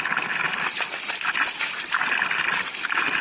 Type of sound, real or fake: real